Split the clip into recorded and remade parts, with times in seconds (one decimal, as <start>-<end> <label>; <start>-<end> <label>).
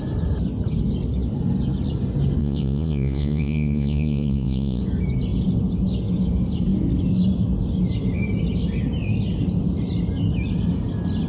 0.0-2.4 recorded; 2.4-4.8 remade; 4.8-11.3 recorded